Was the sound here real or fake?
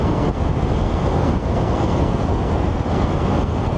fake